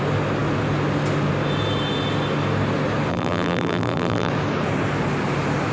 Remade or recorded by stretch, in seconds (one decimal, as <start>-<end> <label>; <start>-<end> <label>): 0.0-3.1 recorded; 3.1-4.3 remade; 4.3-5.7 recorded